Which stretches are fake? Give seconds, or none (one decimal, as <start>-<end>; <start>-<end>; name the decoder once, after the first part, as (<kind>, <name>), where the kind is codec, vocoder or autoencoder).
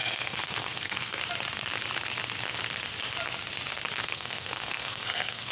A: 0.0-1.2 (codec, SNAC); 4.0-5.5